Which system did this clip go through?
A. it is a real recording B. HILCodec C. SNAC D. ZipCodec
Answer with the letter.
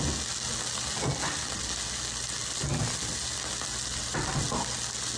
A